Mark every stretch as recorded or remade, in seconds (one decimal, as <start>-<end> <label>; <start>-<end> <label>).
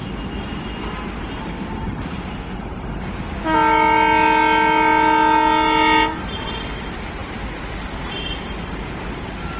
0.0-9.6 recorded